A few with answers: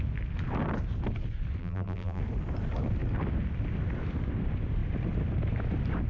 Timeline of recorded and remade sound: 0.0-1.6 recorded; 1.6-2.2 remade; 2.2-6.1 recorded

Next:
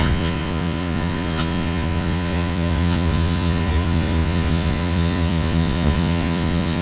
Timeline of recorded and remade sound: 0.0-6.8 remade

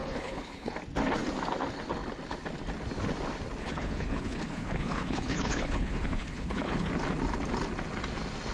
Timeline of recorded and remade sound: 0.0-0.7 remade; 0.7-3.6 recorded; 3.6-6.9 remade; 6.9-8.5 recorded

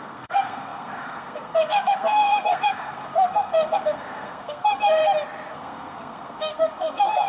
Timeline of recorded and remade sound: 0.0-5.0 remade; 5.0-5.5 recorded; 5.5-7.3 remade

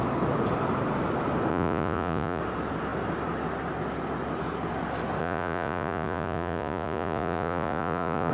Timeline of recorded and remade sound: 0.0-1.5 recorded; 1.5-2.4 remade; 2.4-5.2 recorded; 5.2-8.3 remade